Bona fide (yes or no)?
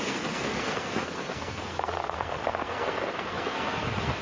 no